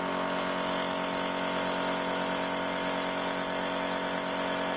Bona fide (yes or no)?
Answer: yes